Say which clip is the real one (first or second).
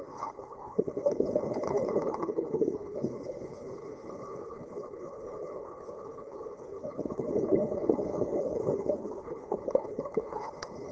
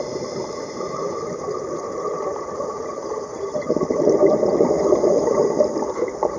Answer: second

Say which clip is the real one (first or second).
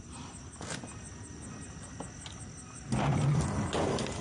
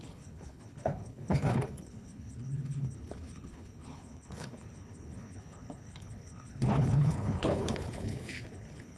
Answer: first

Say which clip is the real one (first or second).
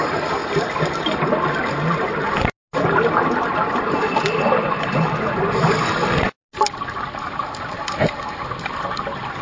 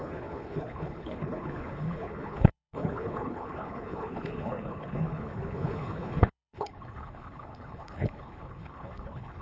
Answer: first